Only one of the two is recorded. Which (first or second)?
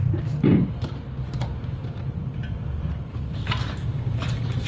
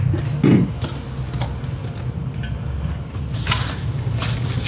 second